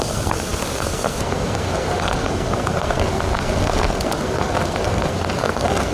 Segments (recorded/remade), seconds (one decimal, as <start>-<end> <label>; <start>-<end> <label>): 0.0-5.9 remade